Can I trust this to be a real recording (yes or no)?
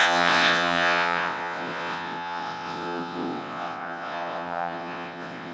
no